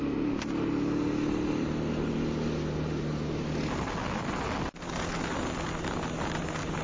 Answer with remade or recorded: recorded